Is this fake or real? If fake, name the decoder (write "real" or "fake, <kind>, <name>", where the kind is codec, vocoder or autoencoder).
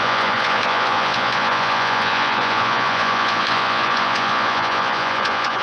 fake, vocoder, Vocos